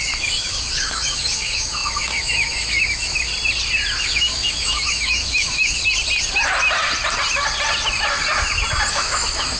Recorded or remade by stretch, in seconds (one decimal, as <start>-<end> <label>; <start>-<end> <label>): 0.0-3.3 remade; 3.3-4.0 recorded; 4.0-5.8 remade; 5.8-8.9 recorded; 8.9-9.6 remade